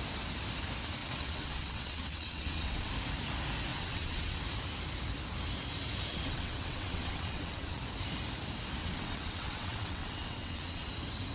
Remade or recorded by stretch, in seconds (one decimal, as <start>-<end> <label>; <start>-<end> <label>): 0.0-1.0 recorded; 1.0-2.9 remade; 2.9-3.7 recorded; 3.7-4.4 remade; 4.4-6.1 recorded; 6.1-7.8 remade; 7.8-8.8 recorded; 8.8-10.9 remade; 10.9-11.3 recorded